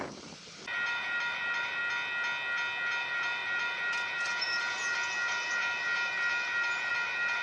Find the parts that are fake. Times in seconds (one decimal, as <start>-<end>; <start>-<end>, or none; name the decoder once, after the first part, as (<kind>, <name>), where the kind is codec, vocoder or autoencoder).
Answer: 0.0-1.8 (vocoder, BigVGAN v2); 3.0-7.4